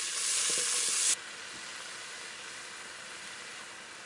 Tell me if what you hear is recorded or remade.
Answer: recorded